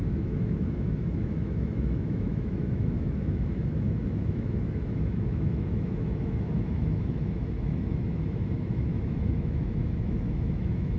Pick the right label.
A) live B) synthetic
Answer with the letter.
B